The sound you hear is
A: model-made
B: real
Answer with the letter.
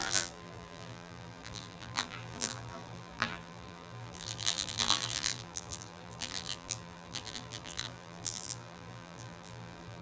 A